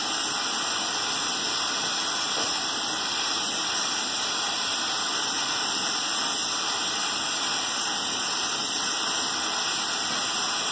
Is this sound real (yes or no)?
yes